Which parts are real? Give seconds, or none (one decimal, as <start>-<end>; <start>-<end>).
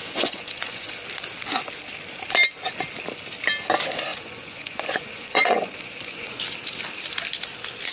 0.9-4.1; 6.4-7.9